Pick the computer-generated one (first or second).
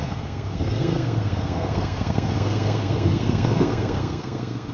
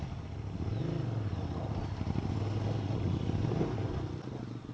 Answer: first